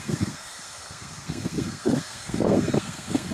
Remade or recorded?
remade